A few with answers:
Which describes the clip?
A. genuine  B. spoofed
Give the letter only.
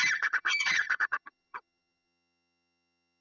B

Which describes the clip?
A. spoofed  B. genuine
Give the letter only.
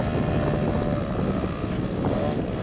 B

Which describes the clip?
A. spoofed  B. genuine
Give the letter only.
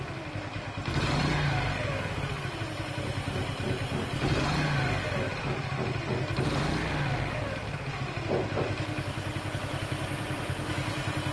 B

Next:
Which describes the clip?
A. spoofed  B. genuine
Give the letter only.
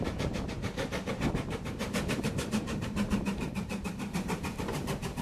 A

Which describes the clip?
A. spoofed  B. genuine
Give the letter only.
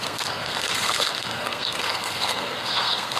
A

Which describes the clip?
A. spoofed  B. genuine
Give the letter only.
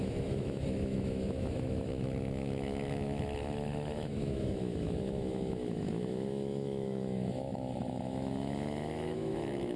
A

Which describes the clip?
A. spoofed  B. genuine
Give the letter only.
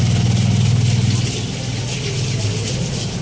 B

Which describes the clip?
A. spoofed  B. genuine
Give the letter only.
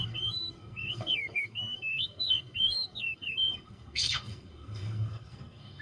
A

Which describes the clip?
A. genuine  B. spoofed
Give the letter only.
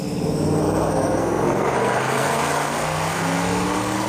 B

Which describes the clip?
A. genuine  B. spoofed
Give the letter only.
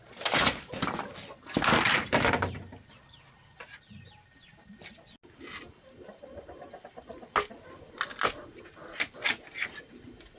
A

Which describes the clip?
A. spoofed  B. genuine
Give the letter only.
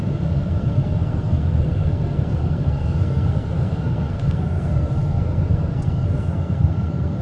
A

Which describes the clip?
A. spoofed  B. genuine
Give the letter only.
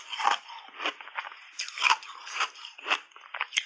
B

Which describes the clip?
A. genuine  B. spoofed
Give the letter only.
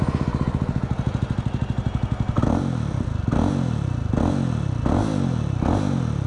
A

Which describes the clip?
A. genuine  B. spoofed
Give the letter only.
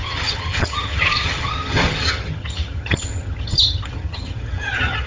B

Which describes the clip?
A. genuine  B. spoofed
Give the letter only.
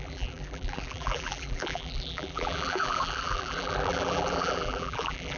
B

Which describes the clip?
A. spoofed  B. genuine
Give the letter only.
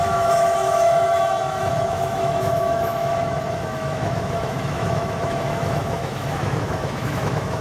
A